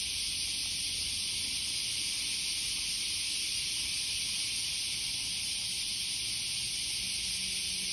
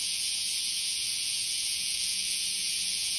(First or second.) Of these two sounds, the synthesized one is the second